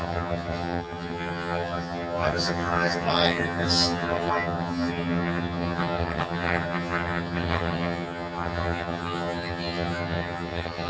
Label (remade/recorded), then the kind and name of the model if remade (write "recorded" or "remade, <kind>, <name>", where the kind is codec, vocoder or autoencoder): remade, vocoder, HiFi-GAN